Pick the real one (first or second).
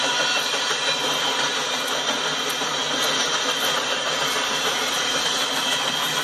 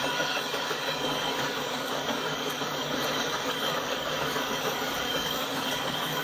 first